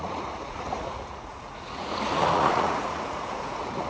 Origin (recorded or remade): remade